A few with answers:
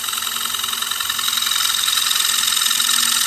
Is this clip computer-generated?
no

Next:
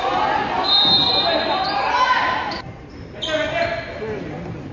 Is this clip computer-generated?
no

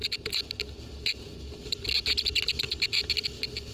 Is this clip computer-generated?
no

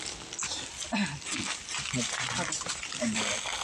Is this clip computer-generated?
no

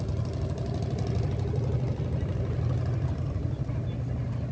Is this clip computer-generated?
no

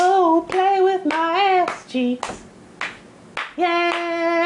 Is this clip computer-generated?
no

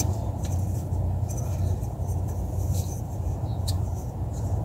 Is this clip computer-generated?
no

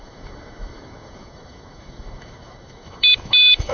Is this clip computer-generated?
yes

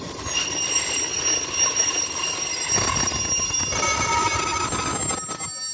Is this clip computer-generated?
no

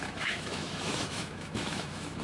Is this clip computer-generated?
yes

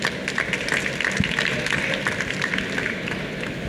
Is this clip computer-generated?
no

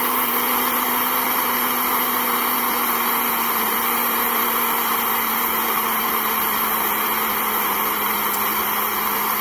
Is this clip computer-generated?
no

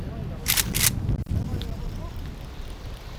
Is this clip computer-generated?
no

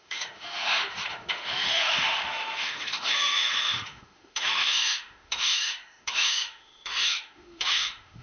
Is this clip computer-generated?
yes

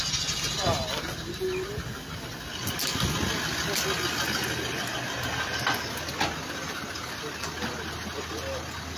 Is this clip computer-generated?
no